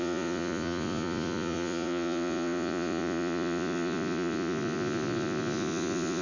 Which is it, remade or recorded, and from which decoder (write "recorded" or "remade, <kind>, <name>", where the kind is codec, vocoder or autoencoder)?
remade, vocoder, Vocos